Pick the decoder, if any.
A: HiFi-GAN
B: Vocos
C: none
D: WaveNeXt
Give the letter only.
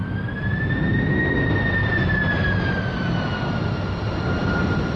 C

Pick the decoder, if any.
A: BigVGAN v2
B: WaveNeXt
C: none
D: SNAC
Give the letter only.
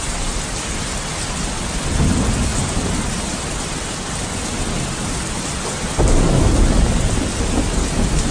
C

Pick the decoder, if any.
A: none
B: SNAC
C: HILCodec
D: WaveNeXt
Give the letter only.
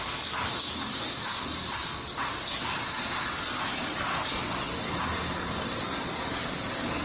A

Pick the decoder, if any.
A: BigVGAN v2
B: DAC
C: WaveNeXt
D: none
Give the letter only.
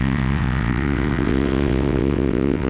C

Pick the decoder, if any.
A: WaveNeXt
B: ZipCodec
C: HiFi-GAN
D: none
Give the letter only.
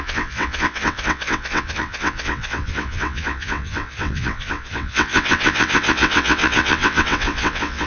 A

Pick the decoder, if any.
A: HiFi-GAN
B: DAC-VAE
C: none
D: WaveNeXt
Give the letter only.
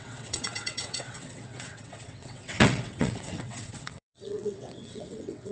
D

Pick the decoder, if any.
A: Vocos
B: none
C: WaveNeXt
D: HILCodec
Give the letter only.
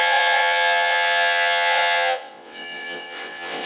C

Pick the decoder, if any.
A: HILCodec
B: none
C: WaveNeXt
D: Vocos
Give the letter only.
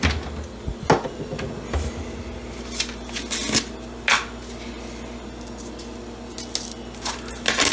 B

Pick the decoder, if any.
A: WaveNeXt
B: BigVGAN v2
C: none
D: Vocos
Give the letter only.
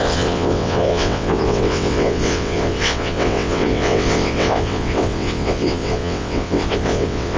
A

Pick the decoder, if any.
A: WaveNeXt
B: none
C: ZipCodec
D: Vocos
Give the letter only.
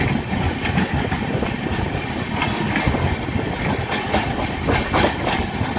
B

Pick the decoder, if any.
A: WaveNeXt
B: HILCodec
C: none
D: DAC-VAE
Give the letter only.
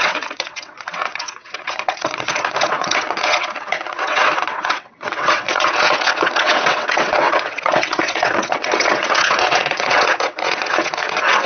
A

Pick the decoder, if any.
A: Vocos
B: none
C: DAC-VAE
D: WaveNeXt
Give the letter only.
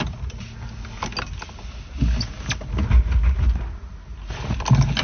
B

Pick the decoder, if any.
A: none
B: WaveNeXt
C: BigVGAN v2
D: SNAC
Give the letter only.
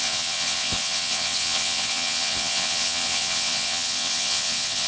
B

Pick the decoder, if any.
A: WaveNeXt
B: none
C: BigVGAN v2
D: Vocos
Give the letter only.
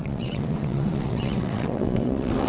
A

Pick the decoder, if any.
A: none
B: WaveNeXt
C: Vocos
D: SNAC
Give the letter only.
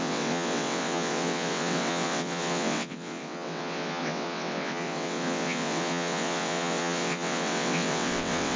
B